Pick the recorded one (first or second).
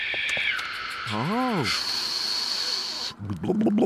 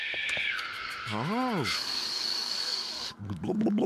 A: first